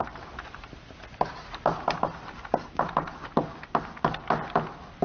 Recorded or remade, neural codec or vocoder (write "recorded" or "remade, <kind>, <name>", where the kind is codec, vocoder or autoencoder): recorded